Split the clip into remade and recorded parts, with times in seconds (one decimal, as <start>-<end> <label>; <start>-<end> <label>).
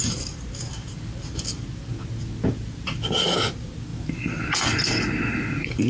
0.0-5.9 recorded